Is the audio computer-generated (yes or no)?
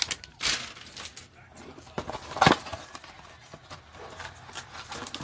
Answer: no